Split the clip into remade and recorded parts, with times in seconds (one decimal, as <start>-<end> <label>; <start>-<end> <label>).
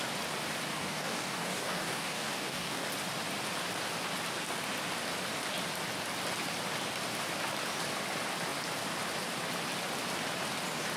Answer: 0.0-0.7 recorded; 0.7-2.9 remade; 2.9-11.0 recorded